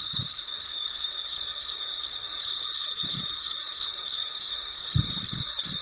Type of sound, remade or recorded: remade